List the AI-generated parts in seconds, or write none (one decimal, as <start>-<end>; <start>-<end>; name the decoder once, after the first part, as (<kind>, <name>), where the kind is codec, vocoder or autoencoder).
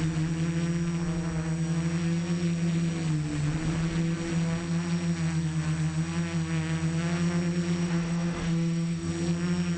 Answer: 7.8-9.1 (autoencoder, DAC-VAE)